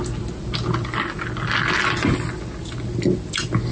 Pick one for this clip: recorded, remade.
recorded